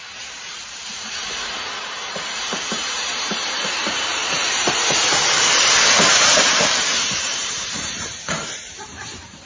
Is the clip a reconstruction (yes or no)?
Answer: yes